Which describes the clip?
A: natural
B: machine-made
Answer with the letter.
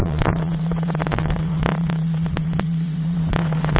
B